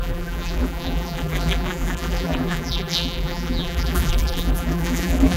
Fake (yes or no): yes